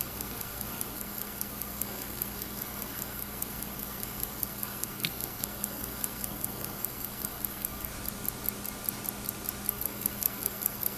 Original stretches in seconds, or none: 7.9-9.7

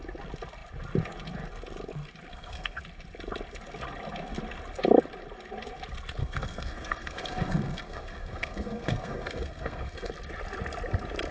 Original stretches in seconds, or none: 0.0-2.3; 2.8-6.2; 10.1-11.3

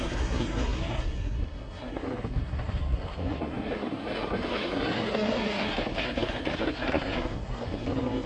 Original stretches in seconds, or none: none

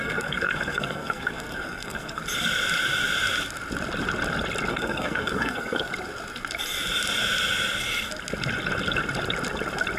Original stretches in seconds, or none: 2.2-4.7; 5.9-10.0

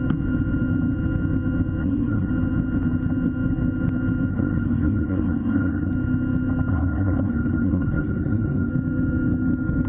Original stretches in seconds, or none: 0.0-1.8; 2.3-4.3; 5.9-6.7; 8.7-9.9

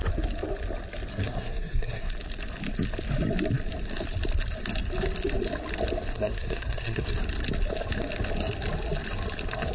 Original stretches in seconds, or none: 0.0-1.1; 2.1-6.1; 7.2-9.7

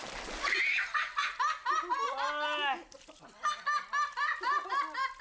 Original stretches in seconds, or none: 0.0-5.2

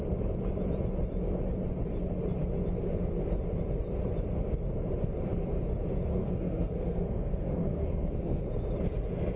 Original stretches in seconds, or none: 0.0-6.1; 8.4-9.4